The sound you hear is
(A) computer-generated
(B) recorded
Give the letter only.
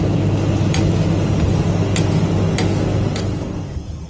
B